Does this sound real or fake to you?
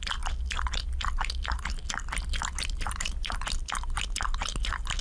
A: real